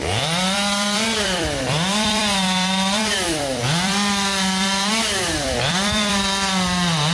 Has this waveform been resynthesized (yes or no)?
yes